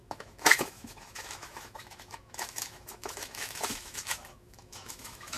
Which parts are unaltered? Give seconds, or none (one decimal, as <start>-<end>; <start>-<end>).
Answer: none